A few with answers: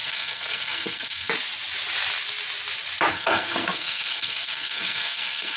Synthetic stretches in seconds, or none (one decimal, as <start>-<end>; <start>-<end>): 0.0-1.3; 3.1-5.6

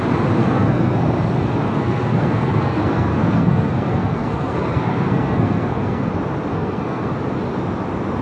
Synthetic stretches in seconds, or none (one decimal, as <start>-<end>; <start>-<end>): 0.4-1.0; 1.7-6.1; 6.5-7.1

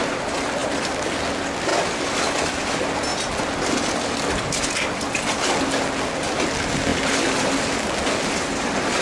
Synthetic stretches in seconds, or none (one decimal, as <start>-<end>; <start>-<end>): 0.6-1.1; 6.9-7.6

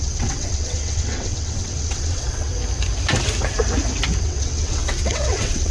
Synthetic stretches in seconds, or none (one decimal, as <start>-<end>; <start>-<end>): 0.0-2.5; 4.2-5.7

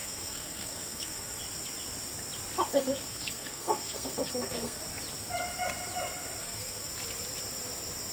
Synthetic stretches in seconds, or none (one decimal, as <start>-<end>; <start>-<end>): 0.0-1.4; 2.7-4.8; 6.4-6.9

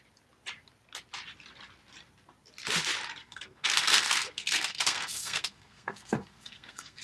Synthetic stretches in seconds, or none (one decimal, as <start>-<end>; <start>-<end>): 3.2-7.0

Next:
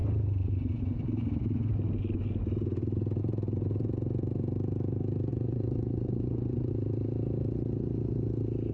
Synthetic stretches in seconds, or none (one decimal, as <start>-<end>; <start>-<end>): 5.3-6.7